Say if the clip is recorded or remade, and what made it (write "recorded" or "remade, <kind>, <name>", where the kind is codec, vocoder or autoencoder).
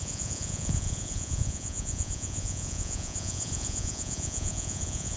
remade, vocoder, Vocos